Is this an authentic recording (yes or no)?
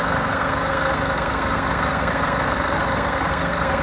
no